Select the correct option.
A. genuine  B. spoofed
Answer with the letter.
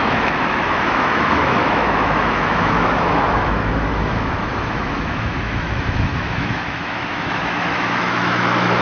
B